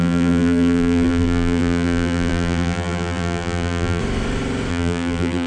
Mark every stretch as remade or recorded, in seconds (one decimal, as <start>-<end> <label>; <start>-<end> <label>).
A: 0.0-4.0 remade; 4.0-4.7 recorded; 4.7-5.5 remade